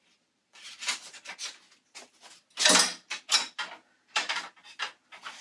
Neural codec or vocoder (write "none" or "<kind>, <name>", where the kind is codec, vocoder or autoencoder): none